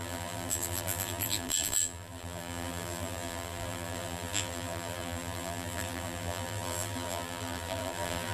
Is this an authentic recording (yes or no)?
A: no